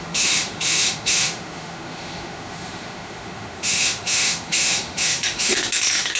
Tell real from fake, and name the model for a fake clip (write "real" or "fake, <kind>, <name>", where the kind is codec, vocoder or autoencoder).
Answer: fake, autoencoder, DAC-VAE